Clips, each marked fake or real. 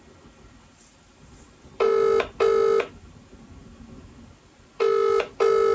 real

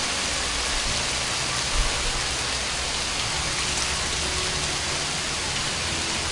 real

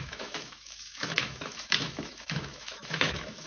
fake